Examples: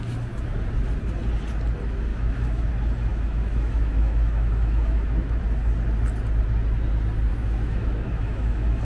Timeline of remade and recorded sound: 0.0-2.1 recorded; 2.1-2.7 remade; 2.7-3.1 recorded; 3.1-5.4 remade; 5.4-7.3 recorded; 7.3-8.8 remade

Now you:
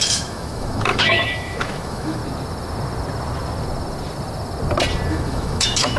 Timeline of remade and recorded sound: 0.0-2.2 remade; 2.2-5.1 recorded; 5.1-6.0 remade